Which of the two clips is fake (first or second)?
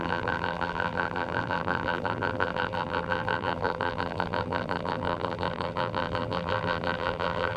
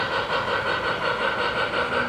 first